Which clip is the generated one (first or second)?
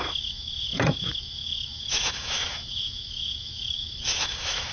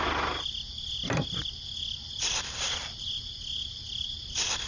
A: first